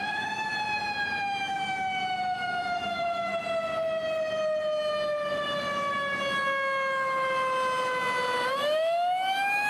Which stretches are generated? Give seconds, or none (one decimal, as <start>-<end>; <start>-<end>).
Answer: 0.0-0.5; 1.2-3.3; 8.5-9.7